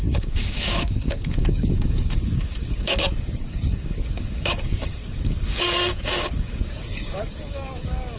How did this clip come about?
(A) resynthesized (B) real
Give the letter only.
A